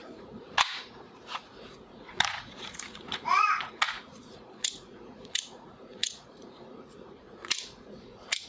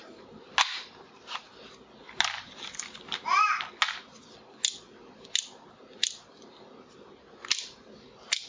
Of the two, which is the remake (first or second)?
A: first